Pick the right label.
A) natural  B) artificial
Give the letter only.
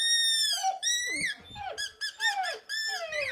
A